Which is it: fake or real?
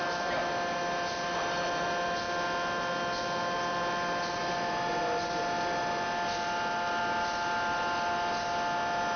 real